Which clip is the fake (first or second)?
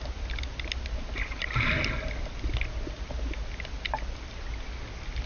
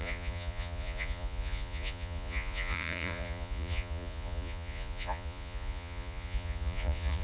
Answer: second